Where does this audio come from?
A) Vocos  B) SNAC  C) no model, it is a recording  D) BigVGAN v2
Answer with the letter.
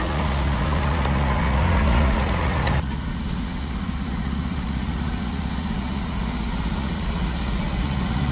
A